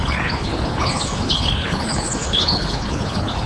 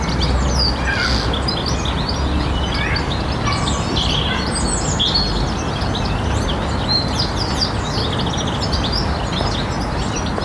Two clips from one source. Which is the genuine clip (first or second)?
second